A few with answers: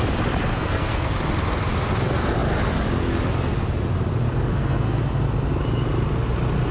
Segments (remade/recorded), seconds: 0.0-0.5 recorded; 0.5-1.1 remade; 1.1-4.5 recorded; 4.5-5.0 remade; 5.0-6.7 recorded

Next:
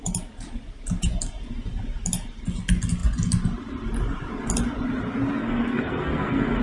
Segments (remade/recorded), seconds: 0.0-5.4 recorded; 5.4-6.6 remade

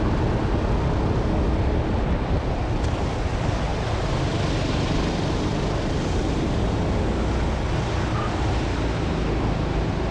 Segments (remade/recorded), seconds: 0.0-10.1 recorded

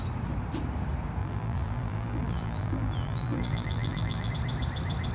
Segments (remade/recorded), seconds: 0.0-1.2 recorded; 1.2-4.3 remade; 4.3-5.1 recorded

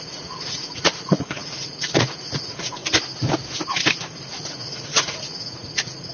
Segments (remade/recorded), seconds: 0.0-2.8 remade; 2.8-4.3 recorded; 4.3-6.1 remade